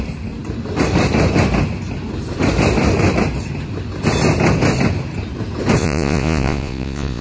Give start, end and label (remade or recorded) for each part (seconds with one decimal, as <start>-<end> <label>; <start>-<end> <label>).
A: 0.0-5.8 recorded; 5.8-7.2 remade